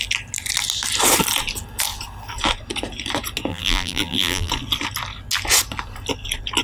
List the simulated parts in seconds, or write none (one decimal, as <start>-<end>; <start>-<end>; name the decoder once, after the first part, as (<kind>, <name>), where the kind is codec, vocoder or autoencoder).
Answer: 3.5-4.5 (vocoder, BigVGAN v2)